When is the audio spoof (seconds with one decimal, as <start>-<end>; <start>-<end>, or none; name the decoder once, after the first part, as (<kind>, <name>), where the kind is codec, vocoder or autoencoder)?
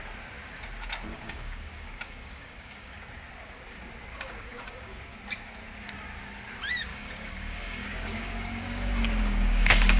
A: 1.1-3.0 (codec, DAC); 4.1-5.0; 6.9-10.0